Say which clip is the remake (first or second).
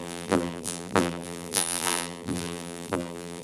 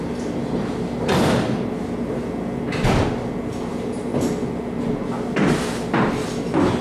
first